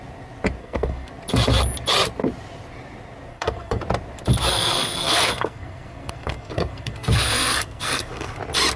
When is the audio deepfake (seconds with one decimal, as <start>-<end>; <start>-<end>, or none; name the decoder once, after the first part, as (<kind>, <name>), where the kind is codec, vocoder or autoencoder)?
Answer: 0.6-1.1 (codec, SNAC); 3.3-3.8; 4.5-8.4